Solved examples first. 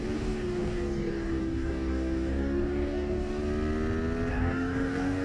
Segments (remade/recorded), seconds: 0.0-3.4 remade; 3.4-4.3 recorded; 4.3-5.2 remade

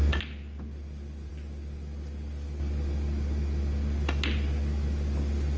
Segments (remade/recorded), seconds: 0.0-5.6 recorded

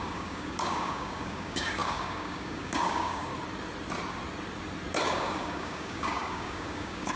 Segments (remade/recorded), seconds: 0.0-3.3 remade; 3.3-5.1 recorded; 5.1-7.2 remade

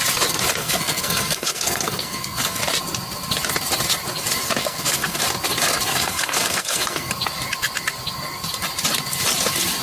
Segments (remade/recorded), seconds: 0.0-0.6 recorded; 0.6-2.6 remade; 2.6-4.6 recorded; 4.6-5.2 remade; 5.2-5.9 recorded; 5.9-7.1 remade; 7.1-9.8 recorded

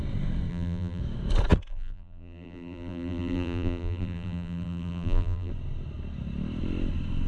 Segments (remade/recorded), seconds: 0.0-0.5 recorded; 0.5-1.0 remade; 1.0-1.7 recorded; 1.7-5.5 remade; 5.5-7.3 recorded

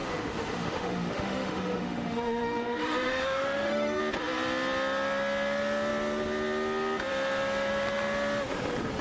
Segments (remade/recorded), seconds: 0.0-4.0 remade; 4.0-9.0 recorded